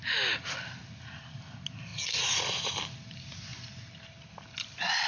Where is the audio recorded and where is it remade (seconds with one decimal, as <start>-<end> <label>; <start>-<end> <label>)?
0.0-5.1 recorded